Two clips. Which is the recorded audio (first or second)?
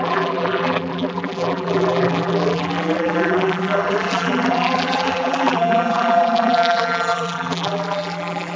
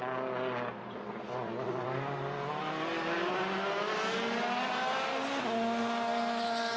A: second